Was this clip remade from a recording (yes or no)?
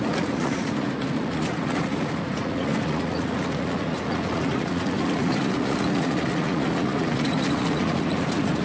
yes